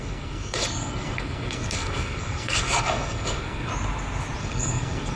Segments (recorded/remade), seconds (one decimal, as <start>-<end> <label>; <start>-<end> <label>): 0.0-3.7 remade; 3.7-4.4 recorded; 4.4-5.2 remade